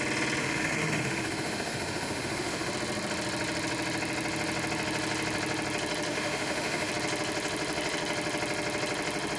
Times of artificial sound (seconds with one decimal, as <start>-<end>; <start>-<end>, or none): 0.4-2.7; 6.1-6.9